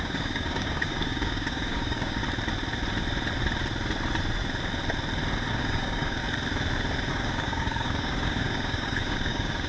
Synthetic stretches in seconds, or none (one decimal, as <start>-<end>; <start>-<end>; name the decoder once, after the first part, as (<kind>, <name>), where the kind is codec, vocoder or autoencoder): 0.0-2.2 (codec, DAC); 5.5-6.2; 7.1-9.7